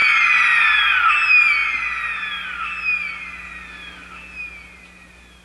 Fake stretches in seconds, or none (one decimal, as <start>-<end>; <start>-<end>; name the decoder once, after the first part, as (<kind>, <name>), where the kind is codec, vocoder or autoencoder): none